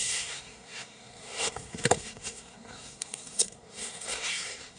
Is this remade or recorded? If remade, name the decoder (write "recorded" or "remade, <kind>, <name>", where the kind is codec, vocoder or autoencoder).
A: remade, codec, SNAC